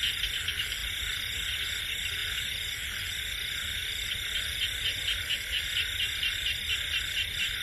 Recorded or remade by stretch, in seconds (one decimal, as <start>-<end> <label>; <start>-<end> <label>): 0.0-7.6 recorded